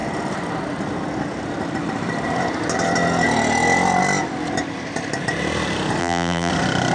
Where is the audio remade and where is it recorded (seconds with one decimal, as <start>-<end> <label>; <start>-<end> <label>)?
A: 0.0-6.0 recorded; 6.0-6.5 remade; 6.5-6.9 recorded